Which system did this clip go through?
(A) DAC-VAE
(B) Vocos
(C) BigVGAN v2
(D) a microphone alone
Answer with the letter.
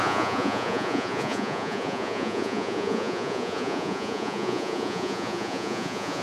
B